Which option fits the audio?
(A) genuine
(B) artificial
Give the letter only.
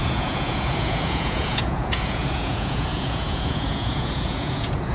B